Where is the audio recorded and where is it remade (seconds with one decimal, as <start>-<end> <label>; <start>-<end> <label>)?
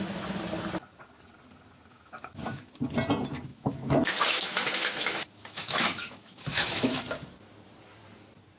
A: 0.0-1.9 recorded; 1.9-2.8 remade; 2.8-3.5 recorded; 3.5-7.0 remade; 7.0-8.6 recorded